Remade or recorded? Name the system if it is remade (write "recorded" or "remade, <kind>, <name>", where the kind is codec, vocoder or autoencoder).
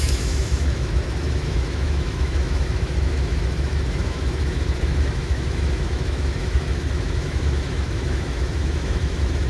remade, autoencoder, DAC-VAE